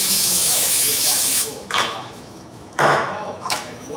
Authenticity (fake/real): fake